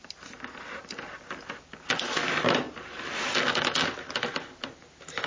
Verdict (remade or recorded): recorded